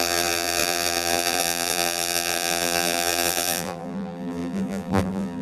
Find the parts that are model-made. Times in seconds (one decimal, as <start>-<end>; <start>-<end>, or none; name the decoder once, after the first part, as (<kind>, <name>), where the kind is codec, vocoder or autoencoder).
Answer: 0.0-5.4 (vocoder, BigVGAN v2)

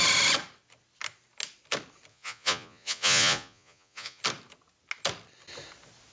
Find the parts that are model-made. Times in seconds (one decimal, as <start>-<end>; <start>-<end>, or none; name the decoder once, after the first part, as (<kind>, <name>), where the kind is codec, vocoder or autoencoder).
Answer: 2.1-4.2 (vocoder, Vocos)

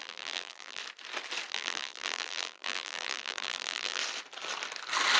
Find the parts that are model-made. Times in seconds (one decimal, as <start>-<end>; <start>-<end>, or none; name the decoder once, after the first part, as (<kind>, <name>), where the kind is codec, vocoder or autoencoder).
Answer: 0.0-0.8 (vocoder, BigVGAN v2); 1.5-4.0

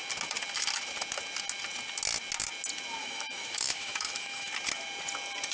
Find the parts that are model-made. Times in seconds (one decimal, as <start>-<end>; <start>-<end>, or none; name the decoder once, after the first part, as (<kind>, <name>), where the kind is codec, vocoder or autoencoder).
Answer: 3.0-4.5 (autoencoder, DAC-VAE)

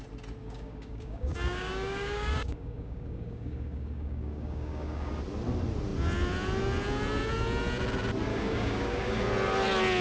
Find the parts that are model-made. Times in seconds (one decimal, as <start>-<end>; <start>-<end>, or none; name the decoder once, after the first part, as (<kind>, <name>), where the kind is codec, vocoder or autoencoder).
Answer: 0.4-5.1 (codec, DAC); 8.3-9.2

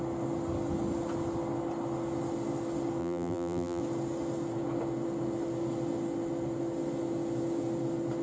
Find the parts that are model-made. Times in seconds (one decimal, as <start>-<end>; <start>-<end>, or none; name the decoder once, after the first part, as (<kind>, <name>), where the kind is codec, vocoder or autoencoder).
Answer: 3.0-3.8 (vocoder, BigVGAN v2)